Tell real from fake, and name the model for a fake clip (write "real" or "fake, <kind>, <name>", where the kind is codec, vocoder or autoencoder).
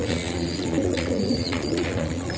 fake, vocoder, Vocos